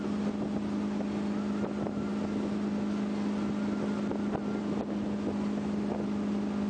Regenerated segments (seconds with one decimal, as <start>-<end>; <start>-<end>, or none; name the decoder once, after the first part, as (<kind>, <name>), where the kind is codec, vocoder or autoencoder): none